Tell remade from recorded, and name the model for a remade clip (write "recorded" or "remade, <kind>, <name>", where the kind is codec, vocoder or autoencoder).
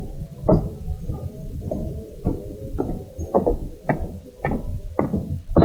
remade, vocoder, BigVGAN v2